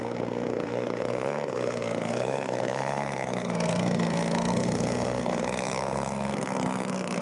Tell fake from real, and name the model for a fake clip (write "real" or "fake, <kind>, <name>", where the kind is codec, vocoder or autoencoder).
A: fake, codec, SNAC